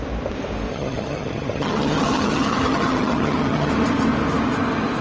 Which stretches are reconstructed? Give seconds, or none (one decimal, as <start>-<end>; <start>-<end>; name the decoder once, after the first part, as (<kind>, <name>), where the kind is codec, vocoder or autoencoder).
0.7-3.7 (vocoder, HiFi-GAN)